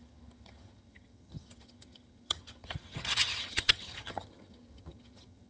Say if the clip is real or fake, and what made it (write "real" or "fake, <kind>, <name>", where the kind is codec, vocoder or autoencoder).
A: fake, vocoder, HiFi-GAN